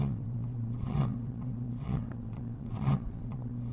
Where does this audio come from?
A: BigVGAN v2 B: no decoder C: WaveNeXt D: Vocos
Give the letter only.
C